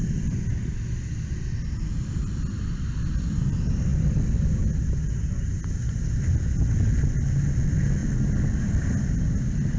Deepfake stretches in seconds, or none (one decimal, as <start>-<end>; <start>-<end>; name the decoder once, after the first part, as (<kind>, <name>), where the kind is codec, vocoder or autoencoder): none